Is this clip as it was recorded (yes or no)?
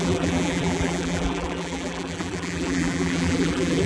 no